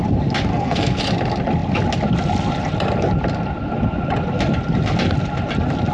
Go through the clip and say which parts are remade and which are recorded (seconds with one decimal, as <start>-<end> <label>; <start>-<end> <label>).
0.0-0.5 recorded; 0.5-1.0 remade; 1.0-5.9 recorded